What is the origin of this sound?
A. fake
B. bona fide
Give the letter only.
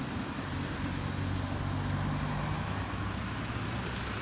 B